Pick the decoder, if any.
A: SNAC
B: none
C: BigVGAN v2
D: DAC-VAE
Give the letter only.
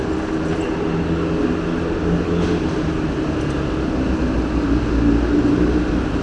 B